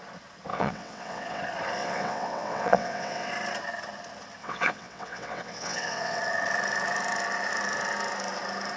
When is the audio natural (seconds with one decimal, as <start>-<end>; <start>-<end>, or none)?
0.0-0.5; 1.4-1.8; 3.3-4.4; 6.2-8.8

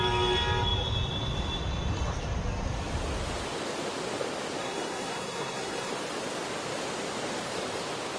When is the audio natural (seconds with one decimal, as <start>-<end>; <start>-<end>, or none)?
0.0-4.6; 5.9-8.2

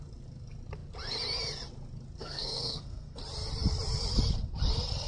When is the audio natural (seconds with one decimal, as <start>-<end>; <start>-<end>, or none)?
0.0-2.2; 3.2-5.1

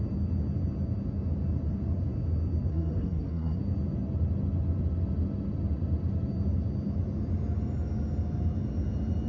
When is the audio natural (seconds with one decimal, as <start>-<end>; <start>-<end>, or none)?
0.0-2.7; 3.6-9.3

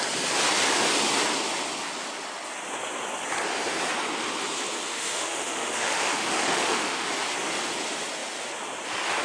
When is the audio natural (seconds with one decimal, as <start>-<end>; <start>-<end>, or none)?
0.0-4.9; 7.1-9.2

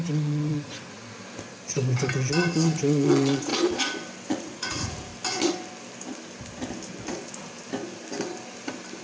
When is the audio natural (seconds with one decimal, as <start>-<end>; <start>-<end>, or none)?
1.0-2.1; 3.5-4.3; 5.1-9.0

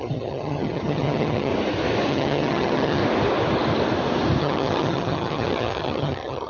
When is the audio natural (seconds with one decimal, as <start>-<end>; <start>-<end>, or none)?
1.5-2.1; 3.0-4.4

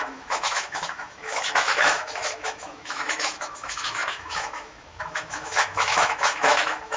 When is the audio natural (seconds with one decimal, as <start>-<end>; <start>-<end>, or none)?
none